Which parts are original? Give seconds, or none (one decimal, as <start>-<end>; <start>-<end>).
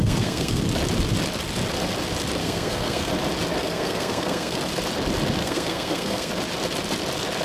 0.6-2.4; 3.1-3.6; 4.6-5.4; 6.3-7.4